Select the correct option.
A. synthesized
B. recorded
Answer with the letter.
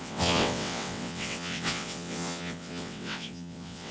A